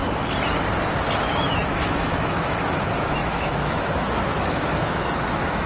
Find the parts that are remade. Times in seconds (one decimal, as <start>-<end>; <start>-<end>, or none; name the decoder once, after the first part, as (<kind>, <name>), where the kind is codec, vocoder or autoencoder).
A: 1.2-5.7 (autoencoder, DAC-VAE)